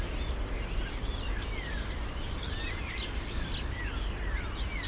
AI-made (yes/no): no